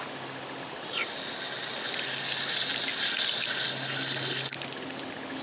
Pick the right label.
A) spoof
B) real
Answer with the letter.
B